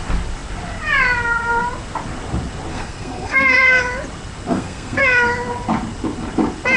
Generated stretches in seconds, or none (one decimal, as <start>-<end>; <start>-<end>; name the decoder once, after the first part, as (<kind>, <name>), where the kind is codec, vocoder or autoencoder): 2.7-3.8 (codec, SNAC); 4.5-5.0

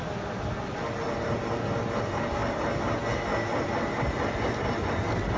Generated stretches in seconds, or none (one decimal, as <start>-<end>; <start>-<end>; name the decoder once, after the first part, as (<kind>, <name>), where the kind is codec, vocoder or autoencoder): none